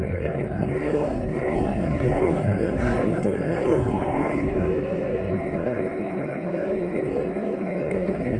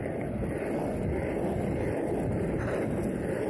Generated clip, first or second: first